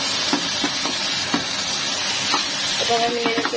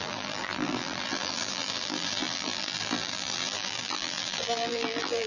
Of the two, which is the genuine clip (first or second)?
first